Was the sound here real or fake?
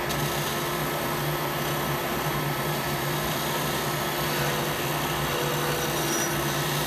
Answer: real